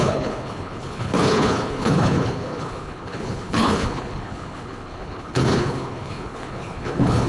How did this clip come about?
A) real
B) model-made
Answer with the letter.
B